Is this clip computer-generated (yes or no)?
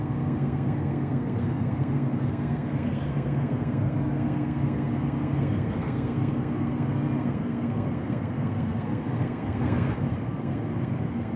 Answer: yes